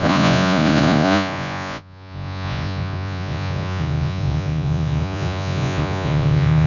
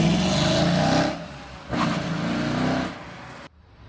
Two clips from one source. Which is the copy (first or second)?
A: first